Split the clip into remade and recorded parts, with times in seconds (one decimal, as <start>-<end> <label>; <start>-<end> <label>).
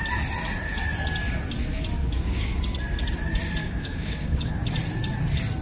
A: 0.0-2.0 recorded; 2.0-2.6 remade; 2.6-3.6 recorded; 3.6-4.5 remade; 4.5-5.6 recorded